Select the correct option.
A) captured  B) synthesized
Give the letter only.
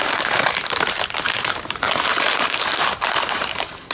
B